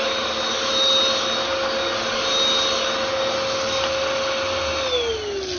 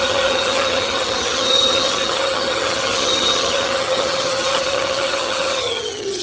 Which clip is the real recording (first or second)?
first